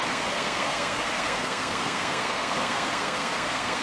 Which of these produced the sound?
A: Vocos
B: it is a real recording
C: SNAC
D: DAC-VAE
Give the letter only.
C